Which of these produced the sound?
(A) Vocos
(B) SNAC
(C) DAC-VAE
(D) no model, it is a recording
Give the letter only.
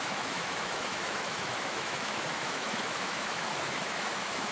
C